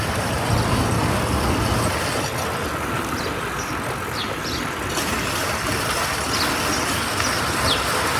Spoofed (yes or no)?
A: no